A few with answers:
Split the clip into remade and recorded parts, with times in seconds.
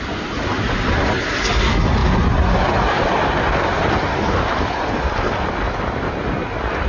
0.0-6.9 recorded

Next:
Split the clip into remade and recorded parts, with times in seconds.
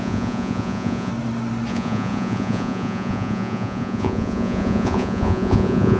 0.0-1.1 remade; 1.1-1.7 recorded; 1.7-6.0 remade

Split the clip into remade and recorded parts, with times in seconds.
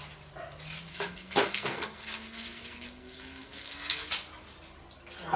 0.0-0.9 recorded; 0.9-4.1 remade; 4.1-5.4 recorded